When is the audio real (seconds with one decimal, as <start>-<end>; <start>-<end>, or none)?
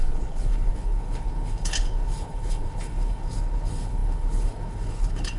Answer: none